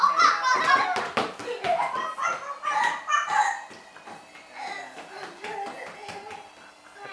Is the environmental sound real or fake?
real